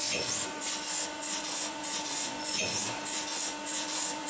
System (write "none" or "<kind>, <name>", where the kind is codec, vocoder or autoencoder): vocoder, Vocos